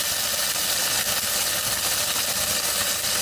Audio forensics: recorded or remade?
recorded